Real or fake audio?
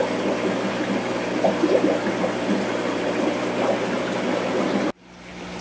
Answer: real